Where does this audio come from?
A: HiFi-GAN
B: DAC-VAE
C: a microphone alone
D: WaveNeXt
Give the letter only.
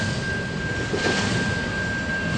C